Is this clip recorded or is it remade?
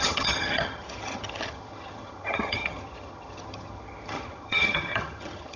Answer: remade